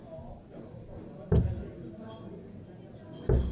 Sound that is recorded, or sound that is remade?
recorded